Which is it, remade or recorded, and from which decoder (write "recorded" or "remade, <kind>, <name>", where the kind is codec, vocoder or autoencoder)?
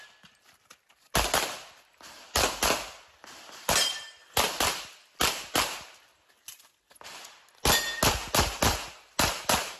recorded